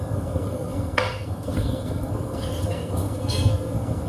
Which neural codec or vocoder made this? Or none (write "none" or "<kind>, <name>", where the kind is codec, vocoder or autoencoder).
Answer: codec, SNAC